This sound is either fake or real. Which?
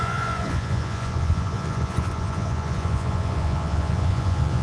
fake